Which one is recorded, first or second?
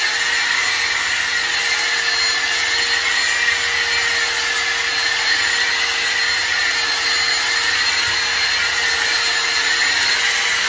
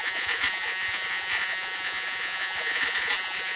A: first